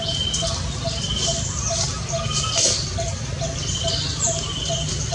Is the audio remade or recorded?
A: recorded